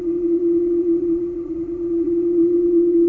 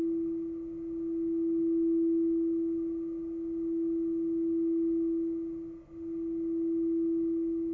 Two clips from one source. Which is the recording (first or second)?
second